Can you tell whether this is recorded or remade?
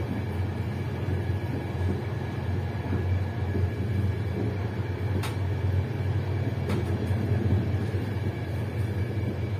recorded